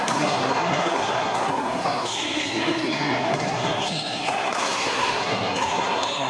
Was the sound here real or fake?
fake